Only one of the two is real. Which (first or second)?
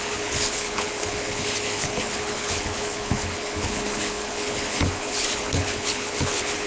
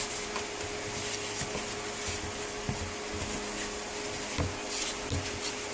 second